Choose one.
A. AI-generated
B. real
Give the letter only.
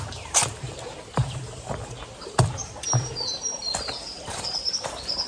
A